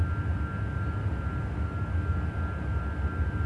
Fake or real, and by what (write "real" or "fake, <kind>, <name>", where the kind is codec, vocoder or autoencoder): real